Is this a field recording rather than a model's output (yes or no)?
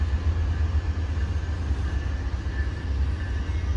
yes